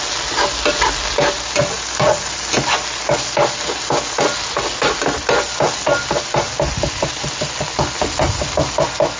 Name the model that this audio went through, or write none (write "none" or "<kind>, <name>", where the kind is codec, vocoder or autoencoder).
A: none